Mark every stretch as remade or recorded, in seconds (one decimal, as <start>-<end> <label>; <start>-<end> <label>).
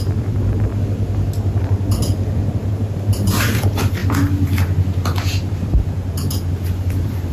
0.0-0.7 remade; 0.7-1.6 recorded; 1.6-4.0 remade; 4.0-6.7 recorded; 6.7-7.3 remade